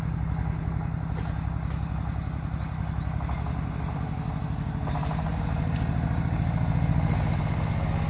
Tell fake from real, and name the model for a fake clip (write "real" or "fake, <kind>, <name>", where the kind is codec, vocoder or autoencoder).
real